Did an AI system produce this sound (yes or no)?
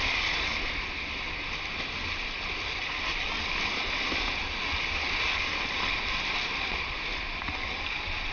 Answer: no